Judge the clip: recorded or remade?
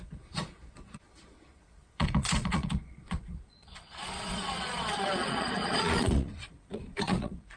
remade